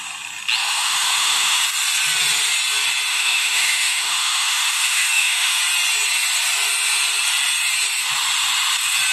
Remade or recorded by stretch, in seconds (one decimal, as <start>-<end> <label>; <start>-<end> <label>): 0.0-0.6 recorded; 0.6-1.6 remade; 1.6-3.1 recorded; 3.1-5.6 remade; 5.6-9.1 recorded